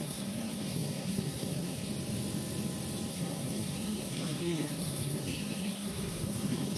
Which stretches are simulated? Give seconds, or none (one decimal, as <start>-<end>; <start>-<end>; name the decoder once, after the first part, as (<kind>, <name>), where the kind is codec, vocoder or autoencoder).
0.0-1.9 (codec, SNAC); 3.1-6.8